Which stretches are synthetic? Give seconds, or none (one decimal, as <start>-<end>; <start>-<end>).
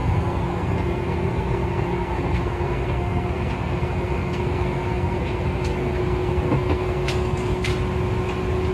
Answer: 0.0-7.7